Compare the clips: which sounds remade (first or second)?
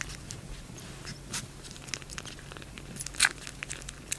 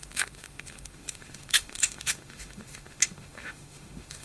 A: second